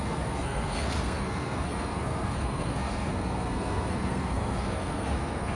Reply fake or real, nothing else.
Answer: fake